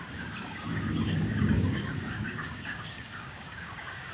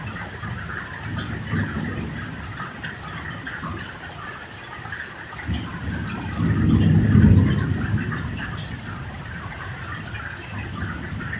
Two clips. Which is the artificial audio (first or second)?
first